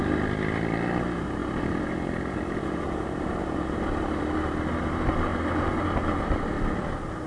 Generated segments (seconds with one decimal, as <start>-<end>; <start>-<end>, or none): 1.4-4.2